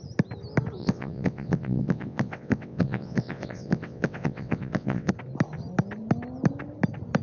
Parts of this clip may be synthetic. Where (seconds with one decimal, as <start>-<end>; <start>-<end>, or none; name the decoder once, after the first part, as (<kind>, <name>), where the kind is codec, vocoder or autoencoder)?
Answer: 0.8-5.1 (vocoder, WaveNeXt)